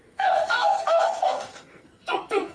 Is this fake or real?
fake